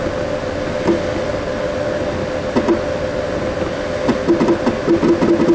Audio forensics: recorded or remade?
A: recorded